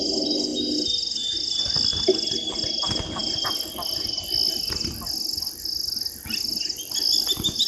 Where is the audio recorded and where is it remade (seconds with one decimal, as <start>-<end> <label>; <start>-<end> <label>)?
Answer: 0.0-7.7 recorded

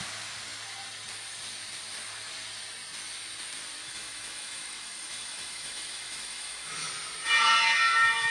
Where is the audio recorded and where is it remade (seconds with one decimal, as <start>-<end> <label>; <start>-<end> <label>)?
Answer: 0.0-3.8 recorded; 3.8-6.9 remade; 6.9-8.3 recorded

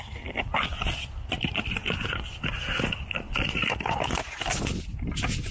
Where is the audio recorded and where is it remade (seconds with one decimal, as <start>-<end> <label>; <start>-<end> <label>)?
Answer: 0.0-5.5 recorded

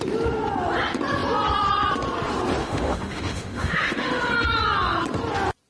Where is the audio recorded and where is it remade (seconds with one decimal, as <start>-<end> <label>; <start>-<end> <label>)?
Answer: 0.0-2.6 recorded; 2.6-4.3 remade; 4.3-5.7 recorded

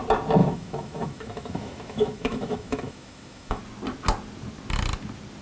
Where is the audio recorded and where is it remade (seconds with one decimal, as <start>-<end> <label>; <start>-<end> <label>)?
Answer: 0.0-0.4 recorded; 0.4-3.6 remade; 3.6-5.4 recorded